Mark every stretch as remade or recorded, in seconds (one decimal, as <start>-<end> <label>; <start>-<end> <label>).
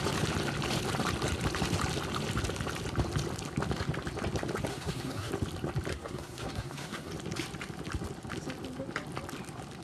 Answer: 0.0-4.7 recorded; 4.7-5.3 remade; 5.3-5.9 recorded; 5.9-7.1 remade; 7.1-9.8 recorded